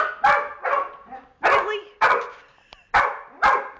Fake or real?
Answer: real